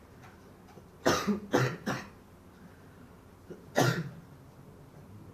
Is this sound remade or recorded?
recorded